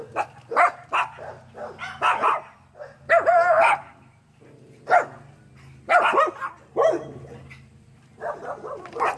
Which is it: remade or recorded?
recorded